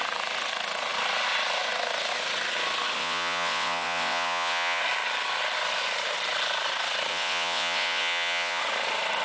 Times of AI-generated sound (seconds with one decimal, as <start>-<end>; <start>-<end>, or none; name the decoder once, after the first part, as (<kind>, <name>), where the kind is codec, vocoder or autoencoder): 3.0-4.8 (vocoder, WaveNeXt); 7.1-8.6